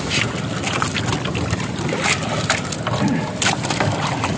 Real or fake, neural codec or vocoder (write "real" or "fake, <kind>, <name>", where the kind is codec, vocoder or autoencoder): real